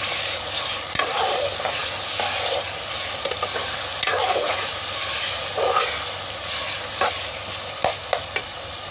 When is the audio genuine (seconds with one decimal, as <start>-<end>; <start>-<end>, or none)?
0.0-4.1; 5.0-8.9